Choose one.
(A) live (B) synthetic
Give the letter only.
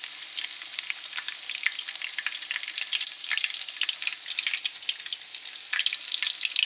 A